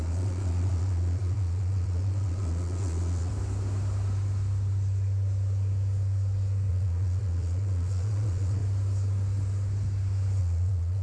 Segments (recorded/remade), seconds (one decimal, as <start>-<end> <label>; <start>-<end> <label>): 0.0-3.3 remade; 3.3-6.7 recorded; 6.7-8.6 remade; 8.6-10.4 recorded; 10.4-11.0 remade